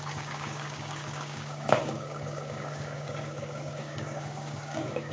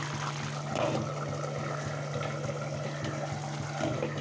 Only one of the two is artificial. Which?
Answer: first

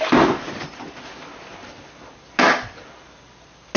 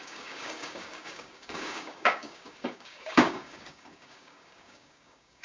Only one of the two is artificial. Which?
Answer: second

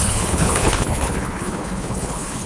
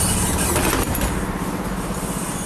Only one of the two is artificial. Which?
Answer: first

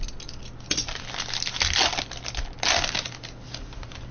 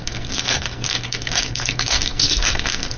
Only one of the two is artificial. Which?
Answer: second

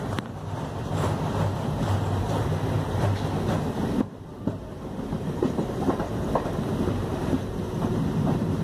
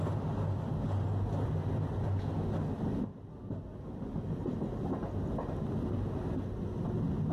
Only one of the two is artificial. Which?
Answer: first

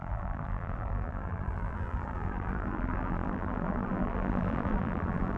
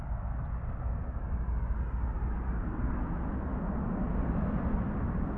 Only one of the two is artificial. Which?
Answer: first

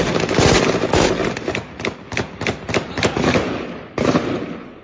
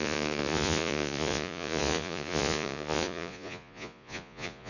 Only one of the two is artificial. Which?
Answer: second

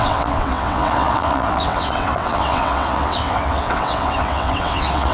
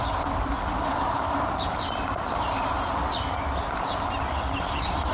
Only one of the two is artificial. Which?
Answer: first